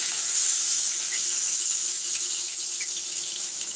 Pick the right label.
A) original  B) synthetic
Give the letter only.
B